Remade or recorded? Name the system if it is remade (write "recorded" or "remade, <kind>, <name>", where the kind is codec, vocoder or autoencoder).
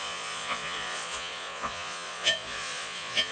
remade, vocoder, Vocos